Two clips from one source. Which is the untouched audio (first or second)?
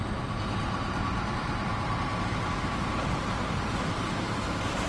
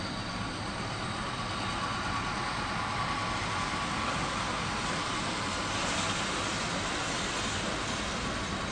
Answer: second